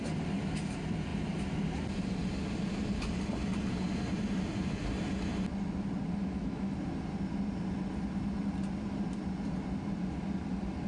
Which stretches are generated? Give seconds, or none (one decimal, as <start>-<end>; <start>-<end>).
6.2-6.7